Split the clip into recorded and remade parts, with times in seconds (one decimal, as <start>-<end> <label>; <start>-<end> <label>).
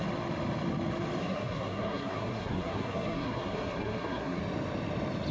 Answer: 0.0-1.2 recorded; 1.2-4.4 remade; 4.4-5.3 recorded